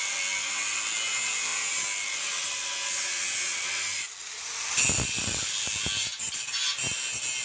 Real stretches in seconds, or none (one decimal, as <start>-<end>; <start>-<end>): 0.0-7.4